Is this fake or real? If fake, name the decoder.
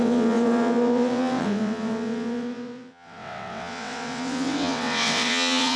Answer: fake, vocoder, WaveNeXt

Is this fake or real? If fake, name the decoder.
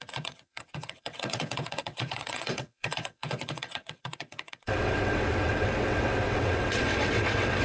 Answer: fake, vocoder, WaveNeXt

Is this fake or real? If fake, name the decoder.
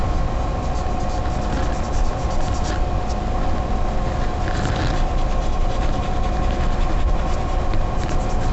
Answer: real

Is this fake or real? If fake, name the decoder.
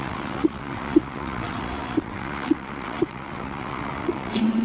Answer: fake, vocoder, WaveNeXt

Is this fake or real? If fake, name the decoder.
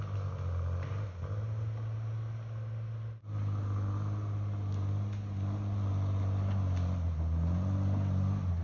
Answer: real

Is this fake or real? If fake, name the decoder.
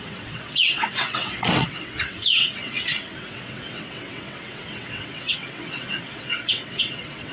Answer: fake, vocoder, WaveNeXt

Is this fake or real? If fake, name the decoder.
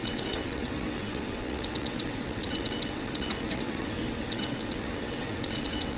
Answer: fake, vocoder, WaveNeXt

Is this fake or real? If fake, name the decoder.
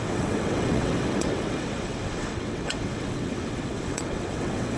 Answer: fake, vocoder, WaveNeXt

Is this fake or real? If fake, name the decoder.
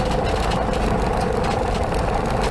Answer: real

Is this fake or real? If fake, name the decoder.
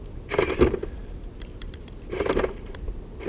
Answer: real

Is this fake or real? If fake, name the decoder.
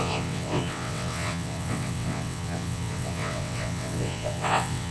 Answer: fake, vocoder, WaveNeXt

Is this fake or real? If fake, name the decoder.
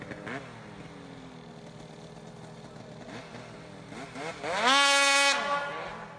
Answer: real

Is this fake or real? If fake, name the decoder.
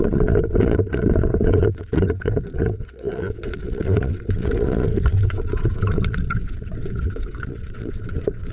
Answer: fake, vocoder, WaveNeXt